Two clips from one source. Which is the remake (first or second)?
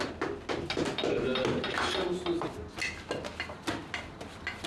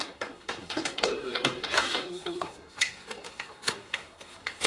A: second